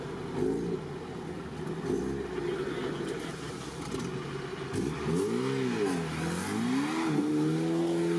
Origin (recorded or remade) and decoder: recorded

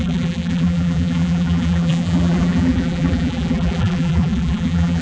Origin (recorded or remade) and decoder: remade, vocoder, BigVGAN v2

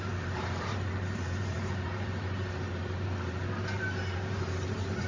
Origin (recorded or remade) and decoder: remade, vocoder, BigVGAN v2